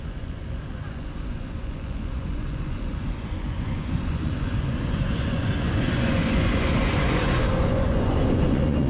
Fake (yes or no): yes